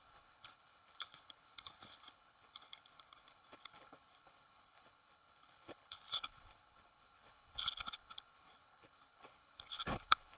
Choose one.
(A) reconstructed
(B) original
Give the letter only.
A